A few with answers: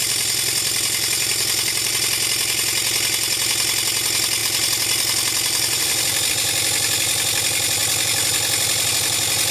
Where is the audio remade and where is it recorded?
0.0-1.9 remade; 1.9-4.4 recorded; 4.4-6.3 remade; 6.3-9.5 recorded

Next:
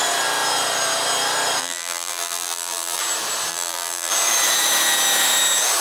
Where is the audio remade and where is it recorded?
0.0-1.6 recorded; 1.6-3.0 remade; 3.0-3.5 recorded; 3.5-4.1 remade; 4.1-5.8 recorded

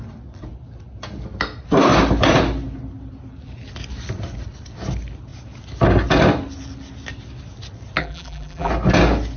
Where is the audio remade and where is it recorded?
0.0-8.0 recorded; 8.0-8.7 remade; 8.7-9.4 recorded

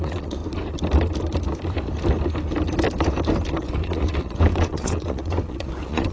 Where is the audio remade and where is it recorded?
0.0-0.4 remade; 0.4-3.5 recorded; 3.5-6.1 remade

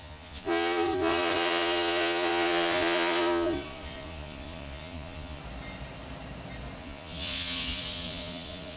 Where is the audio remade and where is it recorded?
0.0-5.4 remade; 5.4-6.8 recorded; 6.8-8.8 remade